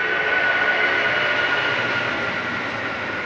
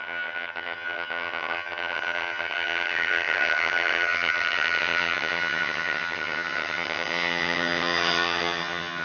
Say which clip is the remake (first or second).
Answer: second